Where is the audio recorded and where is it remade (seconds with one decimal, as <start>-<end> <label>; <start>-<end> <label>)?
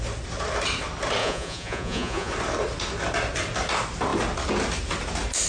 0.0-1.2 recorded; 1.2-2.3 remade; 2.3-5.5 recorded